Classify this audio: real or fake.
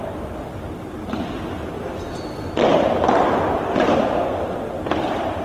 real